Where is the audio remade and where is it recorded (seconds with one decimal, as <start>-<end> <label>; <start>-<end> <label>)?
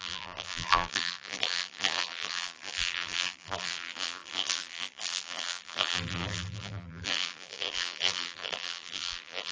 0.0-9.5 remade